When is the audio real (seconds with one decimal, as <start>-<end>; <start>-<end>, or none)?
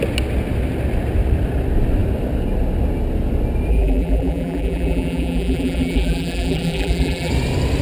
0.0-3.7; 7.3-7.8